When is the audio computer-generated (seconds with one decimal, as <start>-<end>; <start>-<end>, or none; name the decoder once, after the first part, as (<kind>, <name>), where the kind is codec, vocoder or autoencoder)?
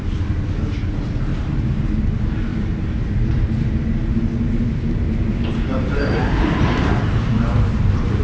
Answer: 1.3-2.0 (vocoder, BigVGAN v2); 2.5-3.5; 5.3-8.2